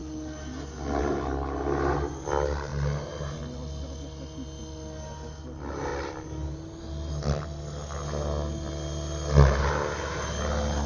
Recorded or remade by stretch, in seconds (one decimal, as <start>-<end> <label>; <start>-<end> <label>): 0.0-10.9 recorded